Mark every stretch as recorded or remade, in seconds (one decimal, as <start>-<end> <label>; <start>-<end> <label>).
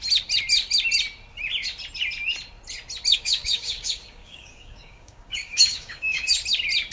0.0-3.1 recorded; 3.1-6.3 remade; 6.3-6.9 recorded